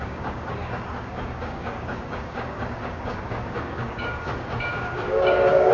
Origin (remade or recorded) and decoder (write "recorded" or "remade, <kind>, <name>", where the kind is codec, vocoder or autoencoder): remade, codec, DAC